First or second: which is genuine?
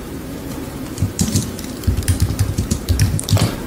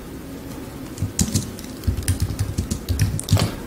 second